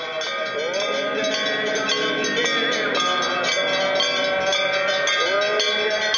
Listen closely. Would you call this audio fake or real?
real